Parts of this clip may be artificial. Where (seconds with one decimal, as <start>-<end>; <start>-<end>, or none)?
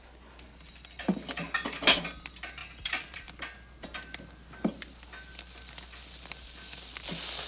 2.6-6.9